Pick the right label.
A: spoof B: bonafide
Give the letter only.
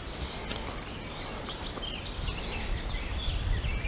B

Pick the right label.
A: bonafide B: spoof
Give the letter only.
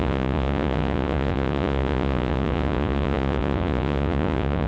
B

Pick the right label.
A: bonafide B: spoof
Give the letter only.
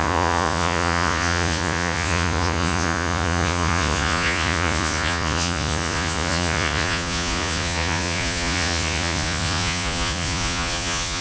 B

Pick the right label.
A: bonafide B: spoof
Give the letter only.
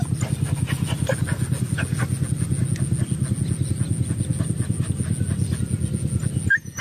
A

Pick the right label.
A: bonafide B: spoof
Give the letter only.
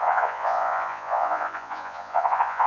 B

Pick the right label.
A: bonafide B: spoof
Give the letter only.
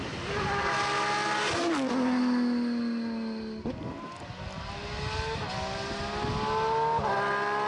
A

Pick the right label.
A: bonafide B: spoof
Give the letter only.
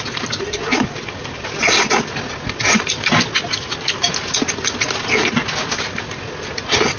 A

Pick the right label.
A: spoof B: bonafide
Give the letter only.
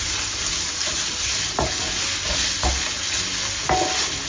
B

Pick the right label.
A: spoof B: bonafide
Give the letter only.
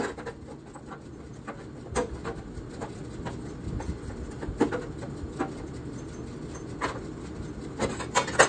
B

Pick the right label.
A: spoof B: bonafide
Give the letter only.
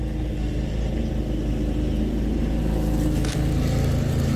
B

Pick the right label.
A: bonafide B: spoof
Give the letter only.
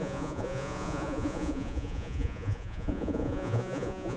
B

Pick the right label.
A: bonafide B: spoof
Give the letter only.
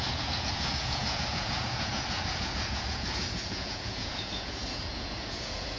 B